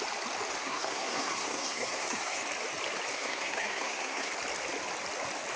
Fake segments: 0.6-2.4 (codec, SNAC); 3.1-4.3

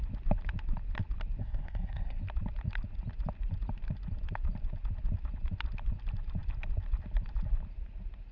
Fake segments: 1.4-2.2 (codec, SNAC)